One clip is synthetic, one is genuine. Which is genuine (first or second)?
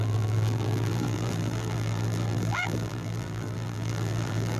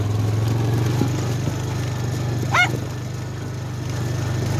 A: second